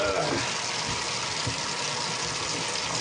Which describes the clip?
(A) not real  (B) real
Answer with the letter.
B